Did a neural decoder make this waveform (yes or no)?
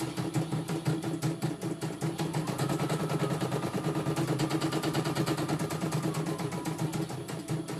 no